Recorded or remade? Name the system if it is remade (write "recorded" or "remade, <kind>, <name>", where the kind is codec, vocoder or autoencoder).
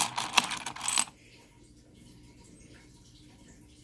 recorded